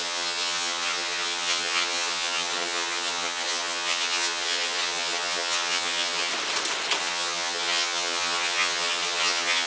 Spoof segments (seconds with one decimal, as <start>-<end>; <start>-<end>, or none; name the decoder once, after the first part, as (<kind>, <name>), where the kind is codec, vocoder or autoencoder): 0.0-6.3 (vocoder, HiFi-GAN); 7.0-9.7